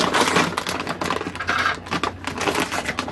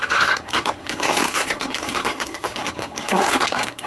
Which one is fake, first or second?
second